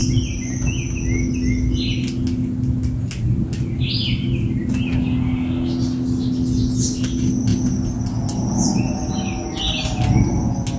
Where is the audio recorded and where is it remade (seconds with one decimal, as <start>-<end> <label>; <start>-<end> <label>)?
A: 0.0-10.8 recorded